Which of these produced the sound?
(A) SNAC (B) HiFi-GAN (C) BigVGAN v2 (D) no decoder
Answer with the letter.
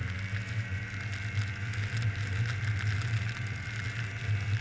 D